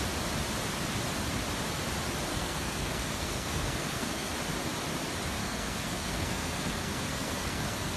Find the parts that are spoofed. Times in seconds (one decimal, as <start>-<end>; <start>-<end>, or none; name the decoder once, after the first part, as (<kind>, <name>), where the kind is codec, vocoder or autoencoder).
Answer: 2.3-4.3 (codec, SNAC); 5.4-8.0